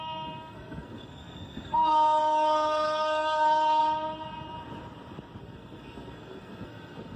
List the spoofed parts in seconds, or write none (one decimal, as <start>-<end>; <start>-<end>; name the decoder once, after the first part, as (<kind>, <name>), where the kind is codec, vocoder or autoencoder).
0.0-3.8 (codec, SNAC); 5.4-7.2